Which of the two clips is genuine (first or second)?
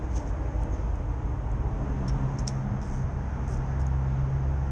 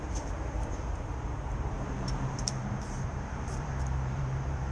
first